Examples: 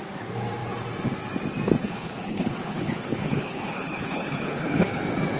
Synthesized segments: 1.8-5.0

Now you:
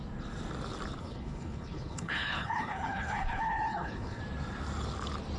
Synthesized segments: 1.0-4.2

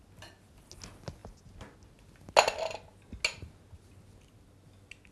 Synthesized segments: none

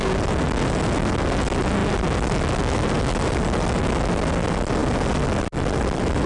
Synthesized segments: none

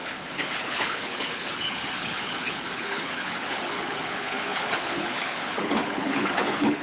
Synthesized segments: 0.0-6.8

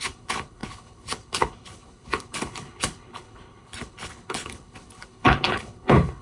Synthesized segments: 0.0-6.2

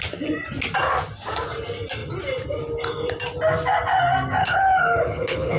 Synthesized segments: 4.4-5.6